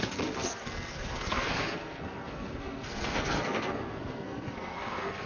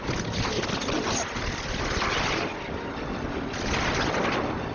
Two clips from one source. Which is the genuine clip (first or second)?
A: second